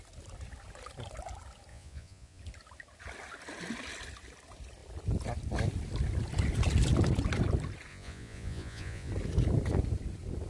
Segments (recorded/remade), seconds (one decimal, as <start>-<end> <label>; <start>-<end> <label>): 0.0-1.7 recorded; 1.7-2.4 remade; 2.4-7.9 recorded; 7.9-9.1 remade; 9.1-10.5 recorded